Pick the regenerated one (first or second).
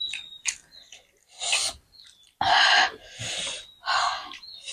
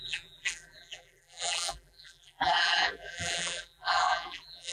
second